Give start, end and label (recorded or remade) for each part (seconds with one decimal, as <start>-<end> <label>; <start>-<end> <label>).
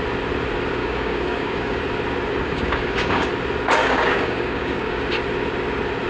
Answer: 0.0-0.8 recorded; 0.8-1.8 remade; 1.8-2.4 recorded; 2.4-3.3 remade; 3.3-3.8 recorded; 3.8-5.0 remade; 5.0-6.1 recorded